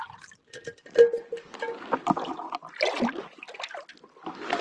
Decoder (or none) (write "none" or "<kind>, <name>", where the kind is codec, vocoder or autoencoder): none